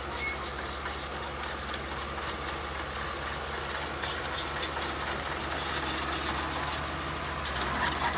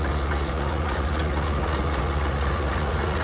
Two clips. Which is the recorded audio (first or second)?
first